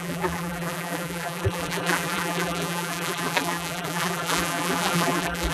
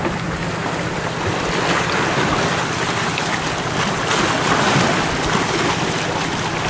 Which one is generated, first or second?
first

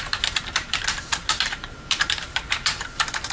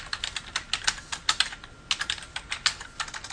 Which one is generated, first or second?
first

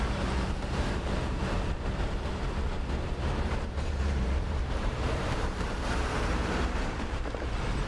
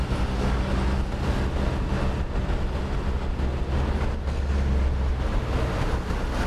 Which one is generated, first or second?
first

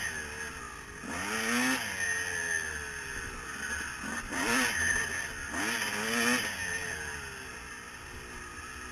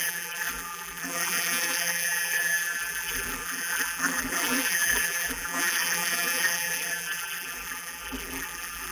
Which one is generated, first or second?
second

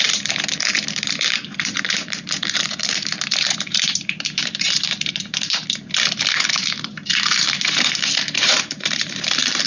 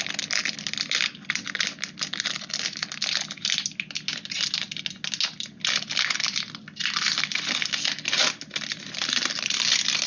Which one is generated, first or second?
first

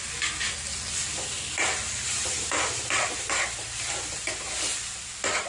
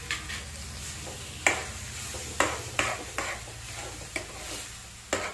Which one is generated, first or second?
first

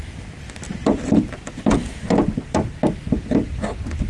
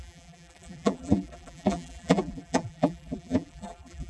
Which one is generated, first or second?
second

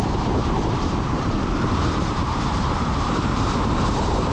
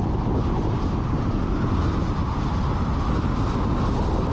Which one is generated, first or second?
first